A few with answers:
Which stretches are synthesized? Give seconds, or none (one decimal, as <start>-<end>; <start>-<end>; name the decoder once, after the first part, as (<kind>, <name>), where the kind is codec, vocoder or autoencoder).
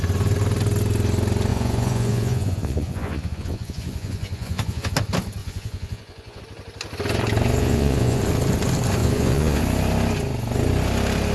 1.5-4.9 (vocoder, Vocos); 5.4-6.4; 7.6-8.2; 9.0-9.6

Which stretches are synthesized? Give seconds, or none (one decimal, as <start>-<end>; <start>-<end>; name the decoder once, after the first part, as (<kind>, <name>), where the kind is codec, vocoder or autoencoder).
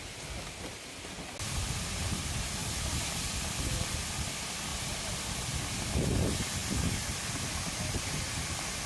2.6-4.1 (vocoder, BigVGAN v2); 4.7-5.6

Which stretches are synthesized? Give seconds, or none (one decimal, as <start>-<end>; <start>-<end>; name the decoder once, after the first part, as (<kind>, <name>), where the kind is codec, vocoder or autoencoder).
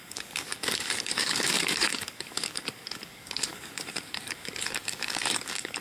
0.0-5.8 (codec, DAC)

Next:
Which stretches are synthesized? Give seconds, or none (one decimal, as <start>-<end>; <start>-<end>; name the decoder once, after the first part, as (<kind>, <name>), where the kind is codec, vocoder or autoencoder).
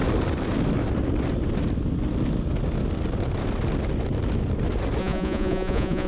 5.0-6.1 (vocoder, Vocos)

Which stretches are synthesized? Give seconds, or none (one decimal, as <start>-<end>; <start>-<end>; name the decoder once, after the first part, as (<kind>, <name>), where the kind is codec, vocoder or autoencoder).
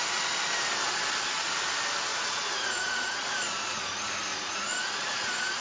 2.1-3.3 (vocoder, Vocos); 4.3-5.6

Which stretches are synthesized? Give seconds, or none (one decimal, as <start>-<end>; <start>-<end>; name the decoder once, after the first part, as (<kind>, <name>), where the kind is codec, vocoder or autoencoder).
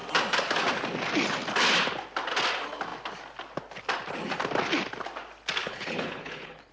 5.6-6.7 (codec, HILCodec)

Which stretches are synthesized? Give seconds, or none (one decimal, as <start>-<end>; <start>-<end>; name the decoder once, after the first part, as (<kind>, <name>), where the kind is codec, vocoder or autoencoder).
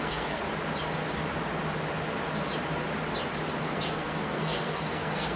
0.0-0.4 (codec, SNAC); 3.6-5.4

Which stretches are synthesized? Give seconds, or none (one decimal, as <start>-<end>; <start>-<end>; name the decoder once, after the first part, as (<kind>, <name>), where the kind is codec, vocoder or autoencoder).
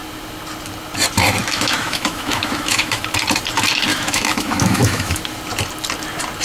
1.4-3.0 (autoencoder, DAC-VAE); 3.9-5.2